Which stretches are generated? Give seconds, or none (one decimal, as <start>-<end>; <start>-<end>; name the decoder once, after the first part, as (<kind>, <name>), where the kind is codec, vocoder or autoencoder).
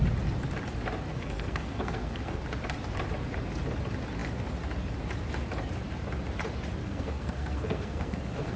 1.1-2.4 (codec, SNAC); 6.8-8.6